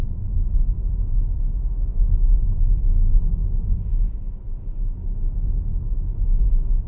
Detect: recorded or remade recorded